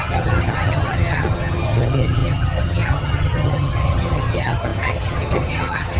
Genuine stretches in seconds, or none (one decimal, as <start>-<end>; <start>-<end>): none

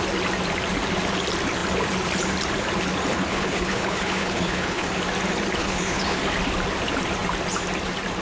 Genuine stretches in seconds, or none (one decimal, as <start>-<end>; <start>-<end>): 0.0-3.1; 4.9-5.6; 6.2-8.2

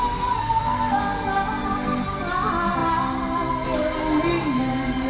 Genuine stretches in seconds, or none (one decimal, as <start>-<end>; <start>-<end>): 0.0-0.4; 1.0-1.6; 2.2-5.1

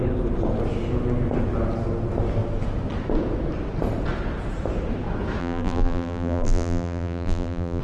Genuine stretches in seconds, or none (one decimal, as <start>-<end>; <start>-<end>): 0.0-5.4

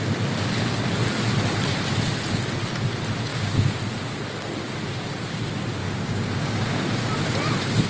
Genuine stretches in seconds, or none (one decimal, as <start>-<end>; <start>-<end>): 0.0-3.3; 3.8-5.8; 6.8-7.9

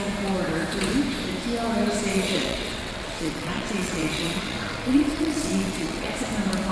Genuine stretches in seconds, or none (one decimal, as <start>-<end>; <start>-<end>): 0.0-2.1; 6.1-6.7

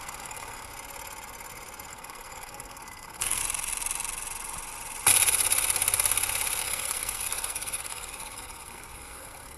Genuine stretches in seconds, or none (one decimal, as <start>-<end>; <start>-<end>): 0.7-1.9; 3.4-6.6